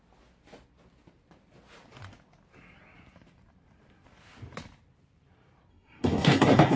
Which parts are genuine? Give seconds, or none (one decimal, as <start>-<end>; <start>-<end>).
0.0-5.7